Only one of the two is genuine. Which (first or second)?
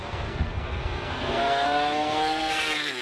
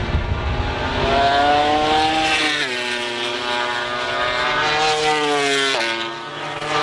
second